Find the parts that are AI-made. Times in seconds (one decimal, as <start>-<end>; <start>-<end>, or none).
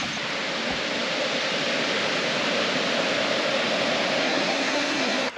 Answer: 4.2-5.4